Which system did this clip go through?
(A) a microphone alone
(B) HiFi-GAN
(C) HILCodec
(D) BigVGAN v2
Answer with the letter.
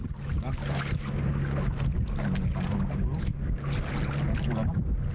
A